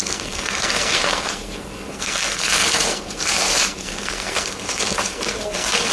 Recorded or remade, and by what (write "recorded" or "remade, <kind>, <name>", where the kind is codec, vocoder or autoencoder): remade, codec, SNAC